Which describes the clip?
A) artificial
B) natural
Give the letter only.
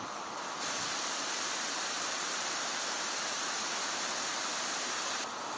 B